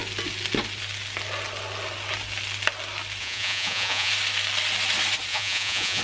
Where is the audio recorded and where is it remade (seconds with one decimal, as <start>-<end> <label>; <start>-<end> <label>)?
0.0-3.2 recorded; 3.2-4.1 remade; 4.1-5.3 recorded; 5.3-6.0 remade